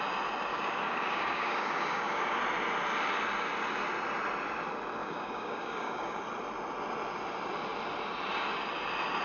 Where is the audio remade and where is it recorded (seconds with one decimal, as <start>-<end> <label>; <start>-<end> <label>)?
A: 0.0-0.5 recorded; 0.5-2.4 remade; 2.4-5.0 recorded; 5.0-6.2 remade; 6.2-9.2 recorded